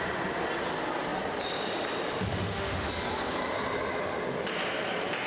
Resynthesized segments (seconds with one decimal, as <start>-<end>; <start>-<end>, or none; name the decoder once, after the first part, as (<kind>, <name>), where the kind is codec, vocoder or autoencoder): 2.3-2.9 (autoencoder, DAC-VAE)